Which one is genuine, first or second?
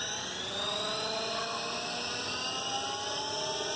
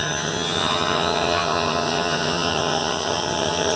first